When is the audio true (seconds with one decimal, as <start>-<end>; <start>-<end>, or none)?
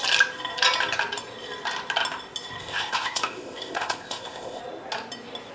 0.0-2.6; 4.6-5.5